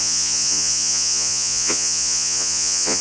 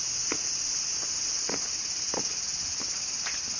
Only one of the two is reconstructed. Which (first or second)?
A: first